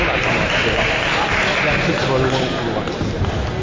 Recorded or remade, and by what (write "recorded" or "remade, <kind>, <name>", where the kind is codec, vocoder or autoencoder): recorded